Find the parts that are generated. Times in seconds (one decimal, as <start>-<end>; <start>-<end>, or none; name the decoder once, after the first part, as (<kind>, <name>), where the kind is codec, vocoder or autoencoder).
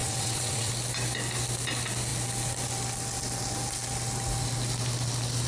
0.0-0.7 (vocoder, WaveNeXt)